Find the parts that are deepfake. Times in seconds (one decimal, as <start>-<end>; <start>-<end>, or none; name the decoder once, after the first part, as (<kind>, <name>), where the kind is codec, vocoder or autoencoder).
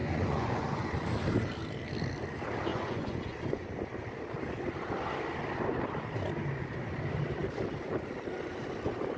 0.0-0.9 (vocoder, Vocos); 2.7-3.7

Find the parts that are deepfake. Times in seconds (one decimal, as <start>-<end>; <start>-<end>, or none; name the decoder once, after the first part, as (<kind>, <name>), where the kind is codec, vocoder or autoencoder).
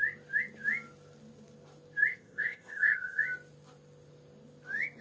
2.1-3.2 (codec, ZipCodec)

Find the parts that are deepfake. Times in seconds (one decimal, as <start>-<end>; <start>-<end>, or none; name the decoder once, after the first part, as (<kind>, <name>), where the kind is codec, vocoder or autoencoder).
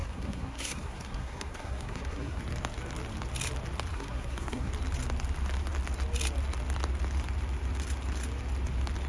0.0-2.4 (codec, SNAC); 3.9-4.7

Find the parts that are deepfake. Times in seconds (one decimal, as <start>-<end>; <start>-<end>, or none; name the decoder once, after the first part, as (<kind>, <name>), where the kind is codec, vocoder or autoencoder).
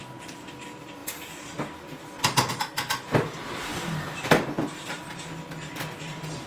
3.7-4.8 (vocoder, BigVGAN v2)